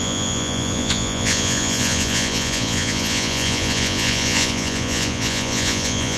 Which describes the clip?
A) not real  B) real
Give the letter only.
A